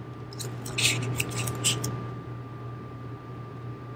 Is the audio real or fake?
real